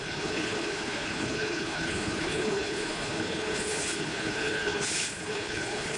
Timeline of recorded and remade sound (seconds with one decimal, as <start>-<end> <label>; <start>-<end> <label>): 0.0-6.0 remade